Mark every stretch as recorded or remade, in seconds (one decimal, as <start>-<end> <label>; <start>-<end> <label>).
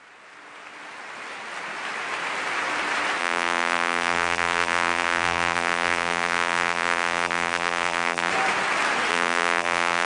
0.0-3.2 recorded; 3.2-8.3 remade; 8.3-9.1 recorded; 9.1-10.1 remade